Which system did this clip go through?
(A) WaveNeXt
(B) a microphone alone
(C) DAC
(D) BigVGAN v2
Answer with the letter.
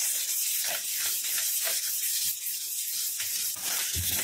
D